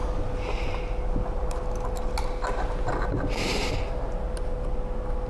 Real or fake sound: real